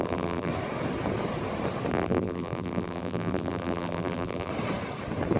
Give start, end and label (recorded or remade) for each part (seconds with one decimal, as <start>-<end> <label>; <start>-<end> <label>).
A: 0.0-0.5 remade; 0.5-1.9 recorded; 1.9-4.5 remade; 4.5-5.4 recorded